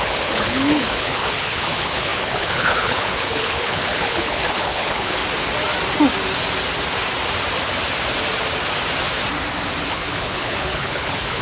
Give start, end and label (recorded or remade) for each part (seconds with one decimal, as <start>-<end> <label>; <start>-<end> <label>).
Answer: 0.0-5.2 remade; 5.2-9.9 recorded; 9.9-11.4 remade